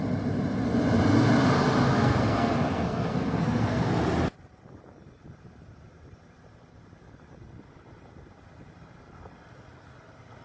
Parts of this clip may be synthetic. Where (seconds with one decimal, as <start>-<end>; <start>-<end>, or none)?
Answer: 2.0-3.9